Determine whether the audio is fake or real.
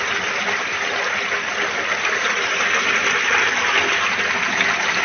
real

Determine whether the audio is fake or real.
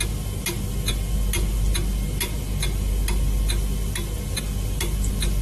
real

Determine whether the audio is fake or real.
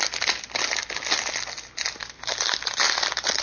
real